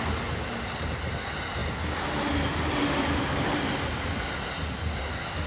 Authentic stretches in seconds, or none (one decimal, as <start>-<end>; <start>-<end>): 0.0-5.5